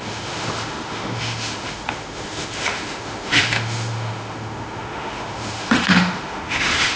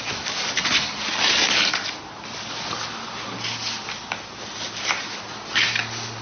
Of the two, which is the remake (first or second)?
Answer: first